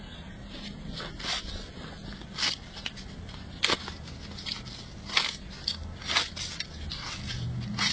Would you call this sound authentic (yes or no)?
yes